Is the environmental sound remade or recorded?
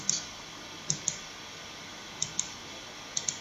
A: recorded